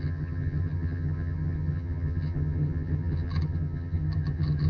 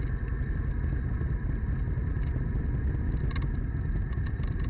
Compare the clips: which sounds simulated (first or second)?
first